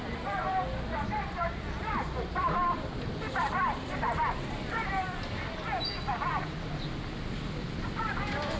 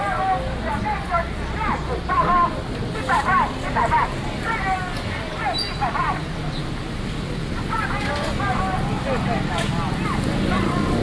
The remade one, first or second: first